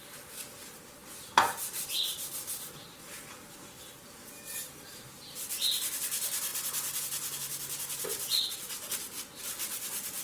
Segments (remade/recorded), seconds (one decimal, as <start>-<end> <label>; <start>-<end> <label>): 0.0-10.2 recorded